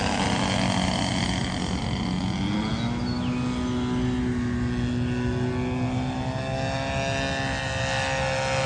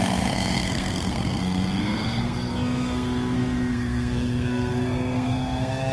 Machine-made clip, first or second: second